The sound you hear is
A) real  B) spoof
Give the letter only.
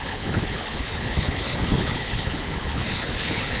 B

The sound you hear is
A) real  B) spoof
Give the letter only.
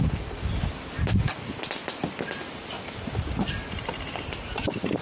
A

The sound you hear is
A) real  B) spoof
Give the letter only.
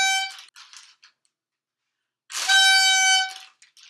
A